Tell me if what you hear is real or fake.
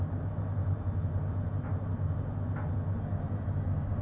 real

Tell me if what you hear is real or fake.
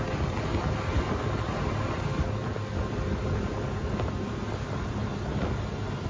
real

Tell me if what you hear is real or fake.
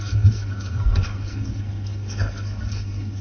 fake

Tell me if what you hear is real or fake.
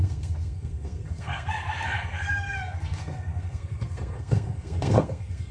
fake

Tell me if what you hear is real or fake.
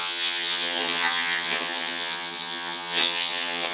fake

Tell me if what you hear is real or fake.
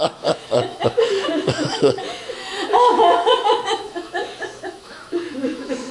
fake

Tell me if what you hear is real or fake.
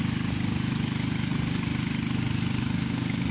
real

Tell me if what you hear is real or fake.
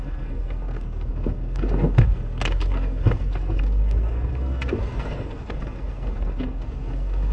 fake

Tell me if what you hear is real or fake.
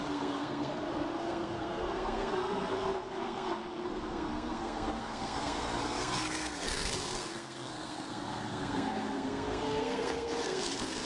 fake